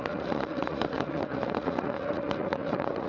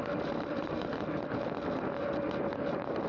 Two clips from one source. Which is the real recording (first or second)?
second